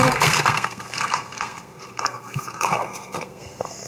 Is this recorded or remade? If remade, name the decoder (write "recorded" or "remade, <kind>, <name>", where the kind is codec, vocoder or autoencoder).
remade, codec, SNAC